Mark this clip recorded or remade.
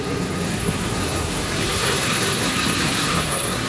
remade